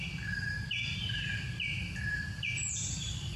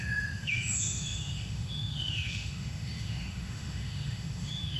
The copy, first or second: second